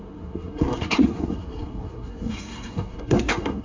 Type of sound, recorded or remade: remade